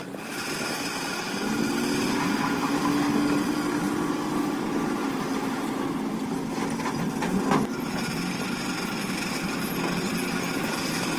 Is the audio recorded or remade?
recorded